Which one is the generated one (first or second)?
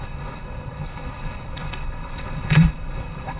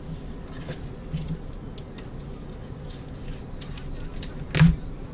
first